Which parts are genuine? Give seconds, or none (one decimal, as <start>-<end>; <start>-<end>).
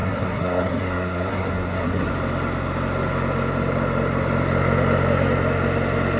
2.1-6.2